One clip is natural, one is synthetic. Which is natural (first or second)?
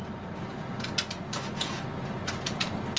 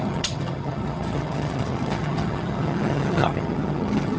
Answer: first